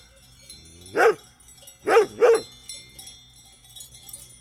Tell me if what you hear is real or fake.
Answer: real